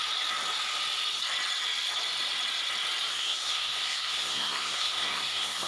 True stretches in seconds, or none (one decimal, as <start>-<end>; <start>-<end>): 0.0-3.1